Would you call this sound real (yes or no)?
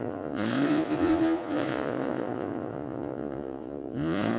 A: no